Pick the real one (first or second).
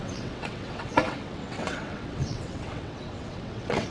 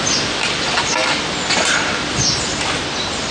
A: second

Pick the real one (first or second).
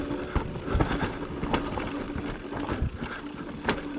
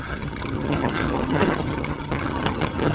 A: first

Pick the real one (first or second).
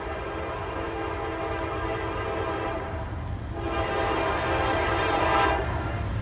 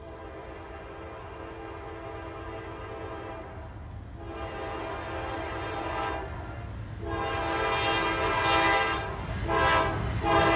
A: second